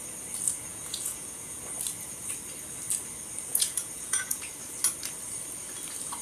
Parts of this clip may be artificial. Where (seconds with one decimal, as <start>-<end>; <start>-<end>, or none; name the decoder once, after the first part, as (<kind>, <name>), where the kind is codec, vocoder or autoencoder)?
0.7-1.6 (vocoder, Vocos); 3.5-4.5